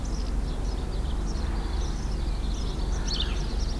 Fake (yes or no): no